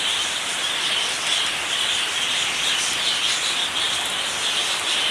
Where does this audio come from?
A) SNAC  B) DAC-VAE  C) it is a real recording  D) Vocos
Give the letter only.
C